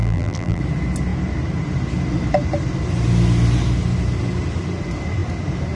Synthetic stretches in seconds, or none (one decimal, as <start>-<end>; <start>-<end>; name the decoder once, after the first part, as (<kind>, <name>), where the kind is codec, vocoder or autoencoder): 0.0-0.6 (vocoder, BigVGAN v2)